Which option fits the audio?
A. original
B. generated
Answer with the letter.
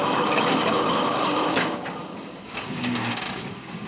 B